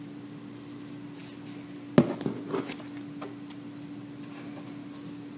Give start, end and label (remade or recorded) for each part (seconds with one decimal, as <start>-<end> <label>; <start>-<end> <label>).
0.0-5.4 recorded